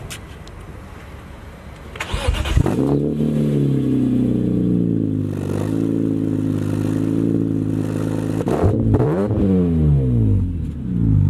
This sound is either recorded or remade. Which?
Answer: recorded